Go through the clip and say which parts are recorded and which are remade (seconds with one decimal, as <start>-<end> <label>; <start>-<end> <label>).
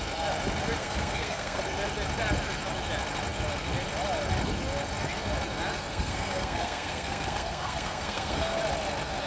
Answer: 0.0-0.8 recorded; 0.8-1.6 remade; 1.6-5.9 recorded; 5.9-8.6 remade; 8.6-9.3 recorded